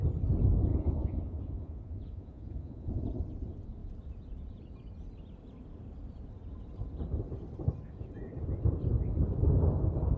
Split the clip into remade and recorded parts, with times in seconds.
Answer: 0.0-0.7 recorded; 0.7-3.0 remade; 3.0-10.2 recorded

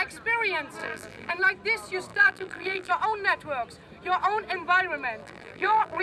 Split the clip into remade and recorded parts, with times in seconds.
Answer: 0.0-0.8 recorded; 0.8-1.3 remade; 1.3-2.1 recorded; 2.1-2.9 remade; 2.9-5.2 recorded; 5.2-6.0 remade

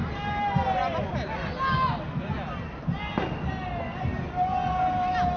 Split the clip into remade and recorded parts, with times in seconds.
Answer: 0.0-5.4 recorded

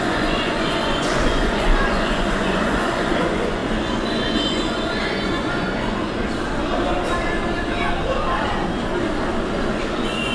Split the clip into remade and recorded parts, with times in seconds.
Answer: 0.0-6.2 remade; 6.2-9.7 recorded; 9.7-10.3 remade